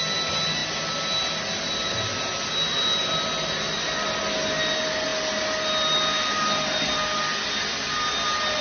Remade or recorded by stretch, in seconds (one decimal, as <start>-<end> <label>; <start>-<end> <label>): 0.0-8.6 recorded